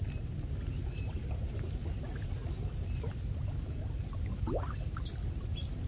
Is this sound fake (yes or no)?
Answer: no